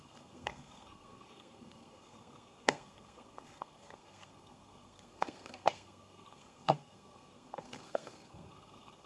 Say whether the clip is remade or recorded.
remade